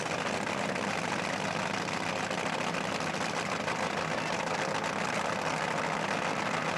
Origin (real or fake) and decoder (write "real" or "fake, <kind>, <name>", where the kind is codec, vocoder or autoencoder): real